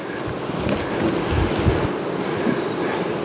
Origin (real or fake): real